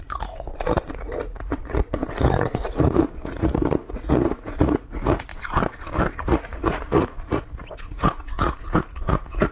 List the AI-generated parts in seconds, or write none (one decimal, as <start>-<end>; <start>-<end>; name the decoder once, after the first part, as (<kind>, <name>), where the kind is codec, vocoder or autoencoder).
0.0-5.3 (vocoder, Vocos); 6.1-9.5